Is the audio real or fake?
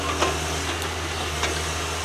real